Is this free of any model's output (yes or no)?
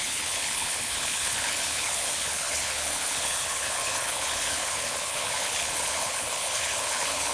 no